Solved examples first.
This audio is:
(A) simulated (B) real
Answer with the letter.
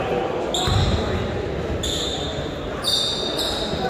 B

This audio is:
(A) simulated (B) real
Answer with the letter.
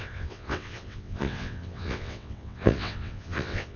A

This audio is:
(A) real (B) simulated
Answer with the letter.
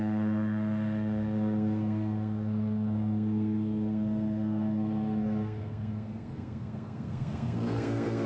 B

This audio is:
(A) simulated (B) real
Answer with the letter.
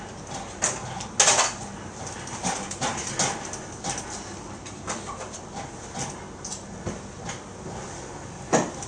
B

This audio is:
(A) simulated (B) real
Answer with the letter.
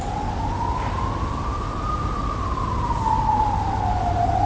B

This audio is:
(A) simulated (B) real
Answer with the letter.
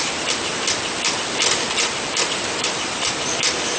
B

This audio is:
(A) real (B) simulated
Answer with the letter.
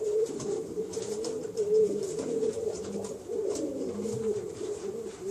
B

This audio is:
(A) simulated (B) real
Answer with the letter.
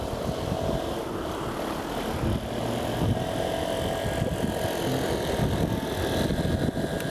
B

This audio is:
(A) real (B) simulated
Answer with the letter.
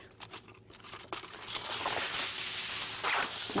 A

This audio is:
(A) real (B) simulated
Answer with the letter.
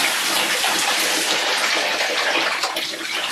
B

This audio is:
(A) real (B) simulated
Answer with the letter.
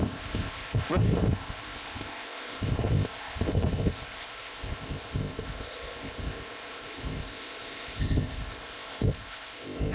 B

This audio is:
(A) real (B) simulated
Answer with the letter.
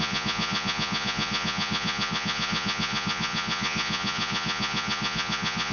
B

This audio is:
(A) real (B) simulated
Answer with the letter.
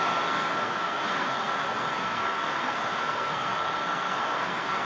B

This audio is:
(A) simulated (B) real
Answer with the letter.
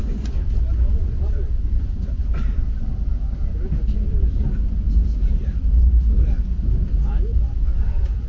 B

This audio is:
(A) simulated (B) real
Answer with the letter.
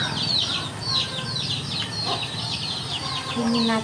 B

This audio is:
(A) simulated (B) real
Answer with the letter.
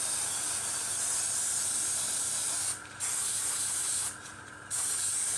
B